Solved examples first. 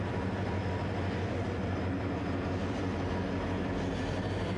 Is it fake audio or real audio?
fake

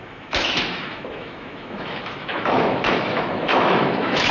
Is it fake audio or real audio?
fake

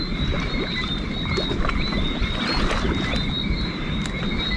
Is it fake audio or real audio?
real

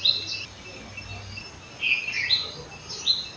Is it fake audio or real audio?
real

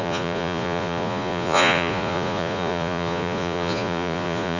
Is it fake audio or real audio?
fake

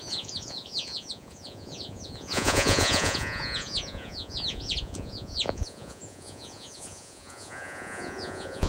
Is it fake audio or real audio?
fake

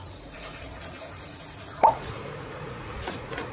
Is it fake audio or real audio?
fake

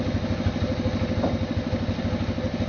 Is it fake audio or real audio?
real